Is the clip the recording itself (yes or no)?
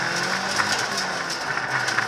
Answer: yes